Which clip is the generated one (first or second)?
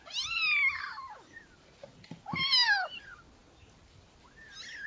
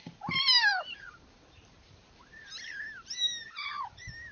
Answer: second